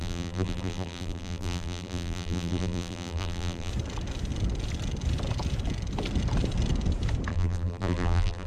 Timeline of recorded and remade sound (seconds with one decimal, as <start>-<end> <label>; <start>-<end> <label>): 0.0-3.7 remade; 3.7-7.3 recorded; 7.3-8.5 remade